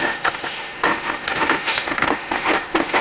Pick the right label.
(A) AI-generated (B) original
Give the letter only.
A